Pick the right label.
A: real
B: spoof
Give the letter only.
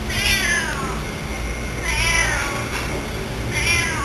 A